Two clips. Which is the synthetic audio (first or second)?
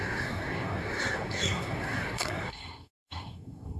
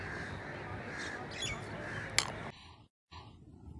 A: first